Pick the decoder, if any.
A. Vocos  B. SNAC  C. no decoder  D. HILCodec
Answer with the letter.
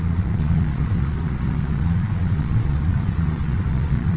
A